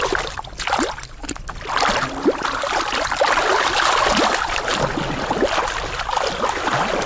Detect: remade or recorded recorded